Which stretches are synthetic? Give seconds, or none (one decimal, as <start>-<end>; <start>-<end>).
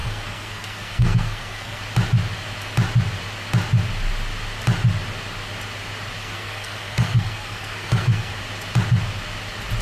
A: 0.0-1.8; 6.2-8.3